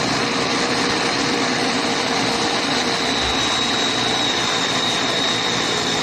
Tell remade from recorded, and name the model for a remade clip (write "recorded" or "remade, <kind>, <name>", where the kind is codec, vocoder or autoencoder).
recorded